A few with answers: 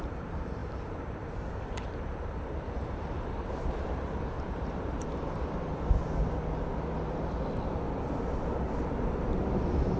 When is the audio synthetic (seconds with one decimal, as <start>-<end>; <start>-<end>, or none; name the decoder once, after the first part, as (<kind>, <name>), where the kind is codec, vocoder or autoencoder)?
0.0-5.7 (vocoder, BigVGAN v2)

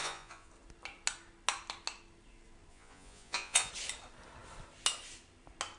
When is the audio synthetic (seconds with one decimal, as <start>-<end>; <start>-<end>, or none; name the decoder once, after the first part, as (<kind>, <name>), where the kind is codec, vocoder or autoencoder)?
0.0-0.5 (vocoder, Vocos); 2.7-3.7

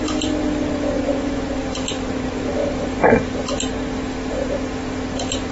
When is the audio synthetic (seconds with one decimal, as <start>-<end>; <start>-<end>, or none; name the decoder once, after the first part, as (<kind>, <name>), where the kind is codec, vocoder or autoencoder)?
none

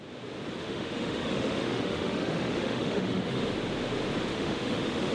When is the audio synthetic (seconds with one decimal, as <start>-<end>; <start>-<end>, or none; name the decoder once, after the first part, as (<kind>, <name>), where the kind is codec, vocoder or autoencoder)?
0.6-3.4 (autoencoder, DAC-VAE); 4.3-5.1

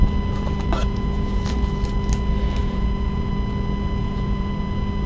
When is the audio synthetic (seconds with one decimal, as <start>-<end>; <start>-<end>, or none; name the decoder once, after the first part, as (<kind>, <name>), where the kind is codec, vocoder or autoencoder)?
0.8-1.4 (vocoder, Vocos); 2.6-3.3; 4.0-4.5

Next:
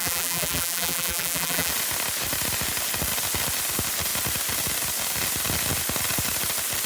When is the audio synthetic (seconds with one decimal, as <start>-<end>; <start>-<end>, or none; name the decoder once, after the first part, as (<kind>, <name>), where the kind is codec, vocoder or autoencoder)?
0.0-1.7 (vocoder, BigVGAN v2)

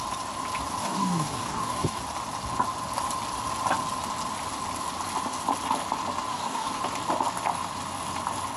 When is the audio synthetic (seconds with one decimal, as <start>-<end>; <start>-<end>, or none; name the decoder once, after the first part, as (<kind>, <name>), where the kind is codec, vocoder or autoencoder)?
0.8-2.0 (codec, DAC); 6.3-6.8